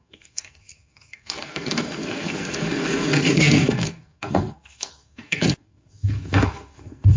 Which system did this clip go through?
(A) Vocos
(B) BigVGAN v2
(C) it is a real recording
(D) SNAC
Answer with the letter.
D